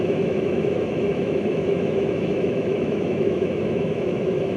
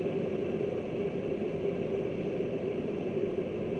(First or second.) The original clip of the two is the second